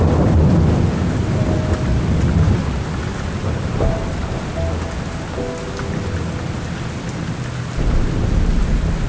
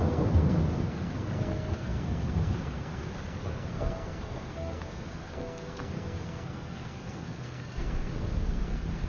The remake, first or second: second